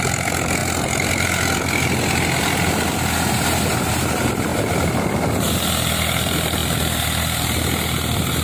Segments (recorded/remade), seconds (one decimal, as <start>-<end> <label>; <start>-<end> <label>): 0.0-8.4 recorded